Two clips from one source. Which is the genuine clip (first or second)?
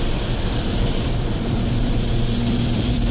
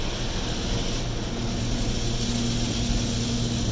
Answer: second